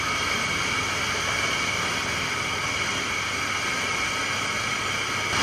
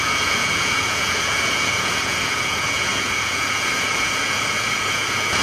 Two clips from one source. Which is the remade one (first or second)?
second